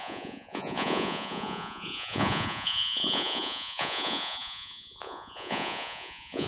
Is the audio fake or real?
fake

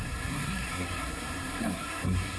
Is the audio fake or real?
fake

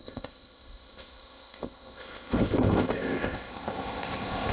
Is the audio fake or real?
fake